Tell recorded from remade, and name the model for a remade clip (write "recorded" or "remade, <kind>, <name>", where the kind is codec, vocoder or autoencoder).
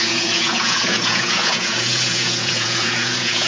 remade, vocoder, Vocos